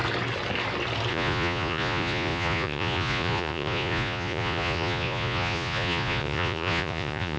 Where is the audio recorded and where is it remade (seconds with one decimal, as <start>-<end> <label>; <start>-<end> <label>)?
0.0-1.1 recorded; 1.1-7.4 remade